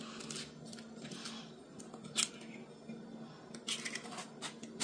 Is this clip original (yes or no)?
yes